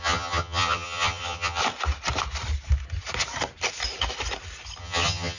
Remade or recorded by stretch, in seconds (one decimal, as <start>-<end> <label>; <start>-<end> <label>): 0.0-1.6 remade; 1.6-4.8 recorded; 4.8-5.4 remade